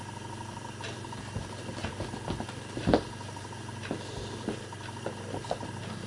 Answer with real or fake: real